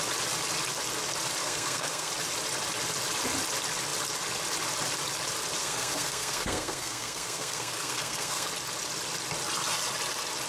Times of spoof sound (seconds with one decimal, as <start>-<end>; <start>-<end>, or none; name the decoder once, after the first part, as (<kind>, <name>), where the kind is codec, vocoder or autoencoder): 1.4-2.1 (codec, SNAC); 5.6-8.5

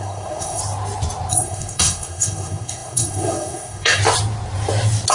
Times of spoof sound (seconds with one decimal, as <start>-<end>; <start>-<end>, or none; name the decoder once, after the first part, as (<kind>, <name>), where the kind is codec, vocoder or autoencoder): 0.0-0.6 (codec, SNAC); 1.3-4.0

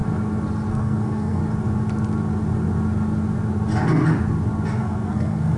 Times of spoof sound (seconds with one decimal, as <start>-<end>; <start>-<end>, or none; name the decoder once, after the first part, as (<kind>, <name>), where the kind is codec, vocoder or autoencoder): 0.7-1.4 (codec, SNAC); 4.8-5.6

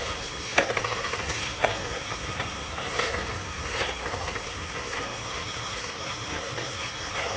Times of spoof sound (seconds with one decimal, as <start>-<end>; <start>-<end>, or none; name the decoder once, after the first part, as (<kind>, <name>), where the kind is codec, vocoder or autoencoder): 0.0-7.4 (codec, SNAC)

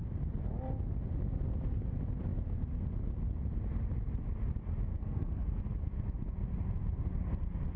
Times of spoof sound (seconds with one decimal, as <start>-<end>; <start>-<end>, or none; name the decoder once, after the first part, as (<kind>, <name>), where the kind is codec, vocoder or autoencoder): 4.9-5.6 (codec, SNAC)

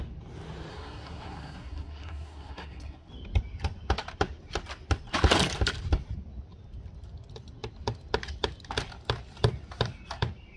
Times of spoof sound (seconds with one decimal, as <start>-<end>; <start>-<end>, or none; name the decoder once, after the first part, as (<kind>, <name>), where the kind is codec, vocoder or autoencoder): 0.7-3.1 (codec, SNAC)

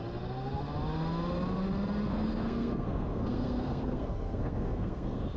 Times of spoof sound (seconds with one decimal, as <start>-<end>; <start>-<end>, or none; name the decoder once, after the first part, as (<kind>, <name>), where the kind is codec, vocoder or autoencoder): 2.1-5.4 (codec, SNAC)

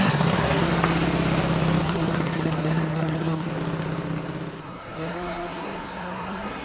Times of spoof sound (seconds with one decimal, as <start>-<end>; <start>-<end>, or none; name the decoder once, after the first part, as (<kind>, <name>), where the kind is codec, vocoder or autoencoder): 0.0-0.7 (codec, SNAC); 1.8-3.5; 4.6-6.6